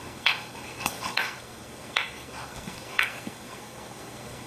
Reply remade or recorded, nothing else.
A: remade